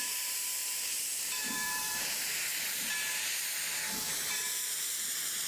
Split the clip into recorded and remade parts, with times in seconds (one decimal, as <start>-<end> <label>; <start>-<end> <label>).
0.0-0.6 remade; 0.6-1.2 recorded; 1.2-2.5 remade; 2.5-4.0 recorded; 4.0-5.5 remade